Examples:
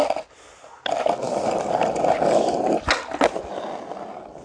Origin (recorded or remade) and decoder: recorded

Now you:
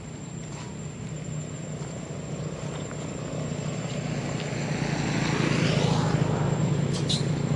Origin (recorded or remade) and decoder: recorded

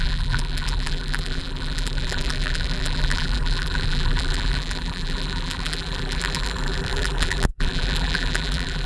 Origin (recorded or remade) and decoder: remade, vocoder, BigVGAN v2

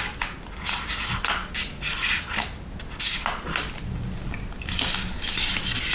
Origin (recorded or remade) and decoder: recorded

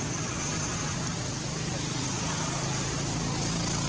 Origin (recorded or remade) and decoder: recorded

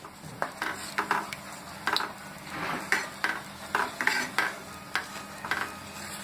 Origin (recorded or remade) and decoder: remade, vocoder, BigVGAN v2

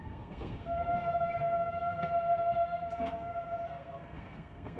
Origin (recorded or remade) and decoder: remade, codec, SNAC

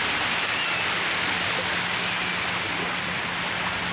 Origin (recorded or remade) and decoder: recorded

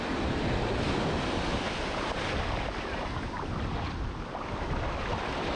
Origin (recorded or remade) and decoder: recorded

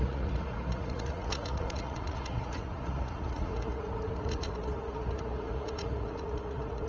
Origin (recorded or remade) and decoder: remade, vocoder, Vocos